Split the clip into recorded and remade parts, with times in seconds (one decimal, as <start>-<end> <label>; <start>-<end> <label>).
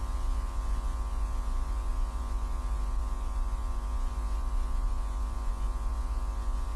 0.0-6.8 remade